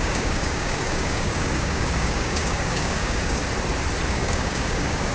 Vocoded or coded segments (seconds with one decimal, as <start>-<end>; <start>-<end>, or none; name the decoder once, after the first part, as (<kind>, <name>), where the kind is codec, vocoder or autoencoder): 0.0-3.4 (codec, DAC); 4.1-5.1